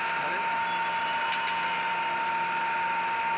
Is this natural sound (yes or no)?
yes